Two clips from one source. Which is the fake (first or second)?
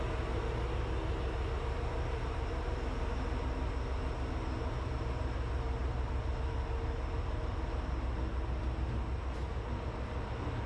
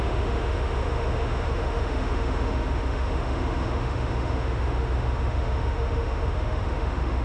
second